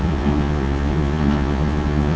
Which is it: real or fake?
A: fake